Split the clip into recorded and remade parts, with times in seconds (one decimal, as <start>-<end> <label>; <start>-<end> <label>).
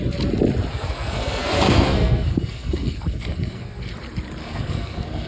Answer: 0.0-0.7 recorded; 0.7-3.9 remade; 3.9-4.4 recorded; 4.4-5.3 remade